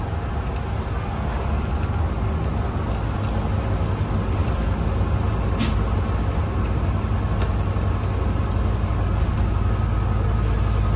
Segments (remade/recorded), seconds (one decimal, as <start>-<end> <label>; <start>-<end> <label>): 0.0-11.0 recorded

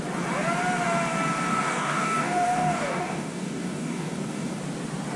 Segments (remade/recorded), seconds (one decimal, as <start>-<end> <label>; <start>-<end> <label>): 0.0-1.5 recorded; 1.5-4.6 remade; 4.6-5.2 recorded

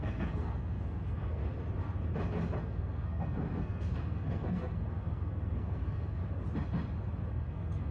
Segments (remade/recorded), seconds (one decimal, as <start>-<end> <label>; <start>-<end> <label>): 0.0-1.4 remade; 1.4-2.6 recorded; 2.6-6.2 remade; 6.2-7.3 recorded; 7.3-7.9 remade

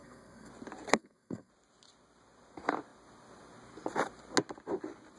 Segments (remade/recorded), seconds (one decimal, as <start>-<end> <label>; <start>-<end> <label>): 0.0-0.5 remade; 0.5-0.9 recorded; 0.9-1.5 remade; 1.5-5.2 recorded